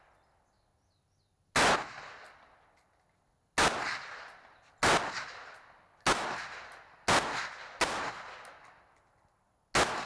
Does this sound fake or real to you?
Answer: real